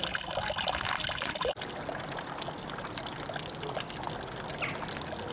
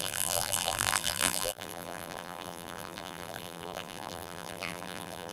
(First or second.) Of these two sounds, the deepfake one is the second